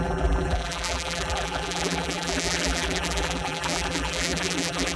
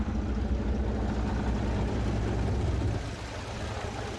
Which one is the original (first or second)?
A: second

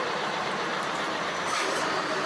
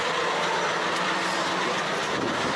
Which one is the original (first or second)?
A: second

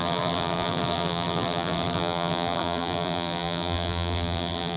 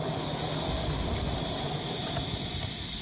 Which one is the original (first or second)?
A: second